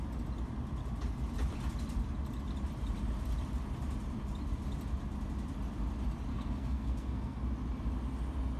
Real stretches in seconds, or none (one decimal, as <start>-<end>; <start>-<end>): 0.0-6.3; 7.4-8.6